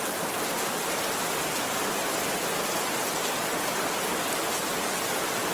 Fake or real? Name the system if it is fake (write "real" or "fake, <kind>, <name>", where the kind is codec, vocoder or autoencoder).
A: real